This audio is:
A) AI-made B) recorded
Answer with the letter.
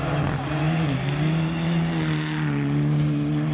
B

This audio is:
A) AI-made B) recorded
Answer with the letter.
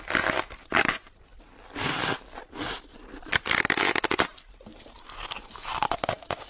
B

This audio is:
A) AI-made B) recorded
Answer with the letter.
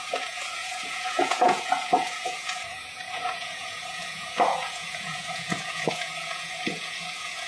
A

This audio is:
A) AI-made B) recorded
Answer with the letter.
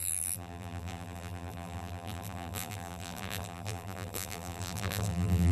A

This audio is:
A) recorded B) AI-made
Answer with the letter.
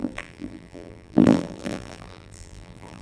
B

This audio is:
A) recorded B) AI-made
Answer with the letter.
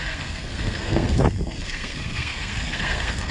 B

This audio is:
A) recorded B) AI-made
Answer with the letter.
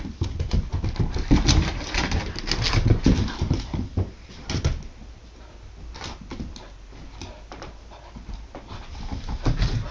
A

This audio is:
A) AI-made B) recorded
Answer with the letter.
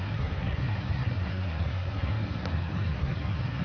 A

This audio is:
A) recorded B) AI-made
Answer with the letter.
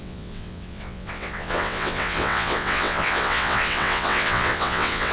B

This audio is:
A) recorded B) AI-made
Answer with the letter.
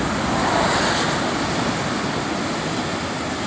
A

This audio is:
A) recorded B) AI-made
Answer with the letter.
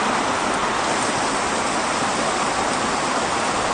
A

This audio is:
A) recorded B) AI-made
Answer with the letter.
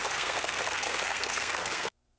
B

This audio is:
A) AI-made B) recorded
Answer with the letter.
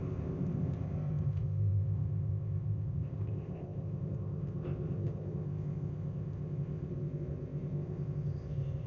A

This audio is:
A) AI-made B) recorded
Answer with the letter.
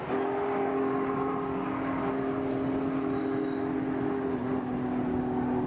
B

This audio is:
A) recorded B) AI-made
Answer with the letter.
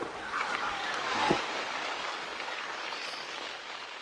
B